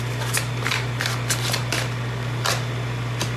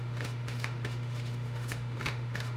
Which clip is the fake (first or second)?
second